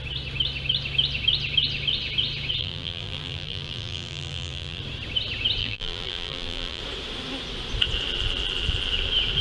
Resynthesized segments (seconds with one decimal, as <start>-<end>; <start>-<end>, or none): 2.6-4.8; 5.6-6.8